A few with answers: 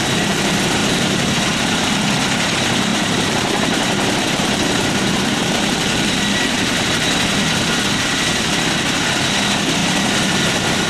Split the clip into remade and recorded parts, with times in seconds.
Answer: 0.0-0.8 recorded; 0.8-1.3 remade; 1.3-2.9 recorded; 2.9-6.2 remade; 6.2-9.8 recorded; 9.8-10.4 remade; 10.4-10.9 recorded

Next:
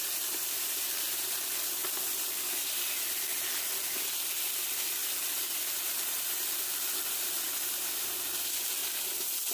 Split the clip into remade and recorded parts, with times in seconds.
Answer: 0.0-3.3 remade; 3.3-4.4 recorded; 4.4-5.0 remade; 5.0-6.2 recorded; 6.2-8.8 remade; 8.8-9.5 recorded